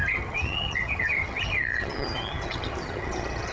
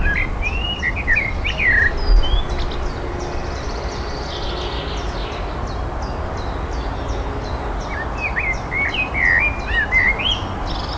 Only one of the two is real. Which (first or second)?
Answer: second